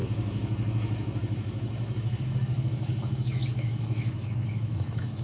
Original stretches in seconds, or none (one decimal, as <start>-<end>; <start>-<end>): none